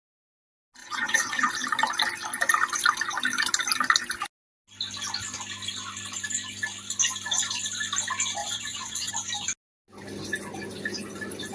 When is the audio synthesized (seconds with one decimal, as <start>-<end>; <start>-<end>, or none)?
0.8-1.5; 8.4-9.1